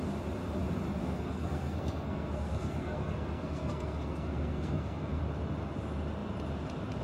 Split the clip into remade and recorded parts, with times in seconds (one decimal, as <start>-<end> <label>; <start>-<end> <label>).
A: 0.0-1.0 recorded; 1.0-5.2 remade; 5.2-7.0 recorded